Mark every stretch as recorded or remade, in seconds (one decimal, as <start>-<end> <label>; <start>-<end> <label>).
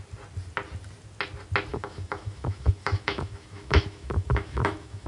0.0-1.7 recorded; 1.7-5.1 remade